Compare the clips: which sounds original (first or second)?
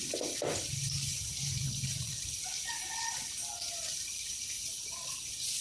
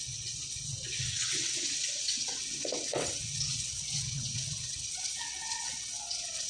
first